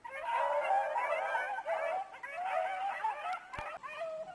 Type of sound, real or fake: real